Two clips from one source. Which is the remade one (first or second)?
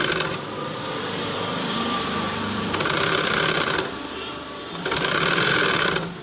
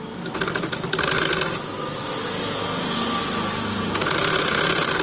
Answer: first